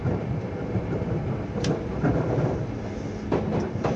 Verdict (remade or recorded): remade